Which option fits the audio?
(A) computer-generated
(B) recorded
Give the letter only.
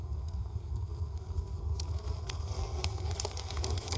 A